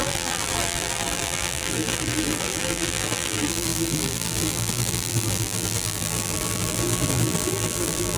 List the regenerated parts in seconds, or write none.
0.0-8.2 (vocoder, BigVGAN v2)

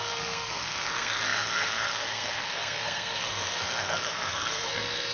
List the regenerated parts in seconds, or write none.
0.0-5.1 (codec, SNAC)

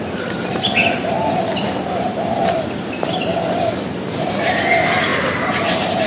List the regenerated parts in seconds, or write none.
none

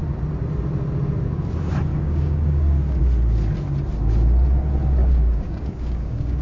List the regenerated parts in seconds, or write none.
1.9-3.0 (codec, DAC); 5.0-6.4